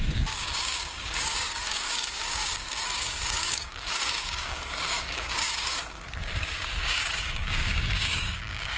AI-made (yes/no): yes